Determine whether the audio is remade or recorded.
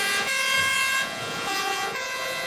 remade